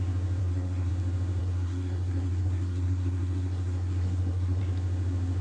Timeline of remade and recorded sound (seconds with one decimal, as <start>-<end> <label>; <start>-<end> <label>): 0.0-0.4 recorded; 0.4-0.9 remade; 0.9-1.4 recorded; 1.4-4.6 remade; 4.6-5.4 recorded